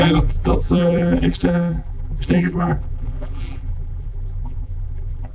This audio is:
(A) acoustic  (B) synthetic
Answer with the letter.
B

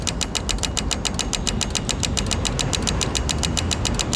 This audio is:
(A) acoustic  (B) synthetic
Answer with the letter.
A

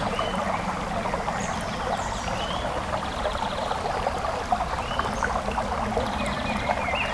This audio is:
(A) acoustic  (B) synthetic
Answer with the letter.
A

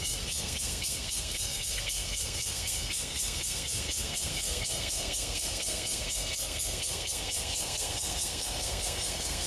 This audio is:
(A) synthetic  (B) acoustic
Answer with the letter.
A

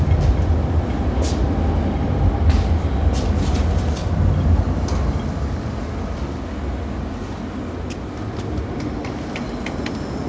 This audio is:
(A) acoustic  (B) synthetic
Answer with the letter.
A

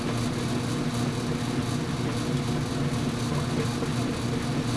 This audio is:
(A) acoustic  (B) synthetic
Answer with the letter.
A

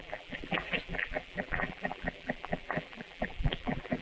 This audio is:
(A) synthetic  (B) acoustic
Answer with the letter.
A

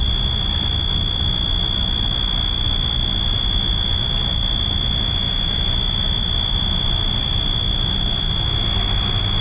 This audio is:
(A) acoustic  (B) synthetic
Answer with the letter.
A